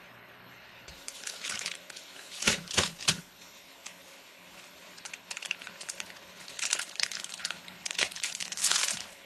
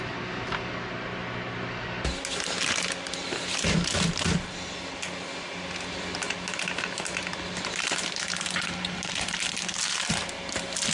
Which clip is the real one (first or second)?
second